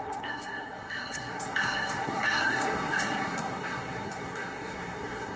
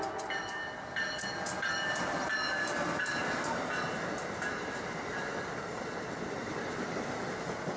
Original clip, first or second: second